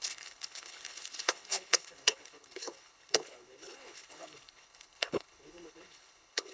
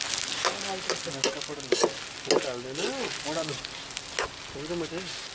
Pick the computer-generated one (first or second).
first